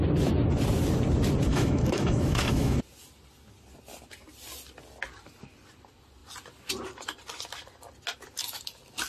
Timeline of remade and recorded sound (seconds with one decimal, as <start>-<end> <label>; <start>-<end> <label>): 0.0-1.5 recorded; 1.5-2.8 remade; 2.8-9.1 recorded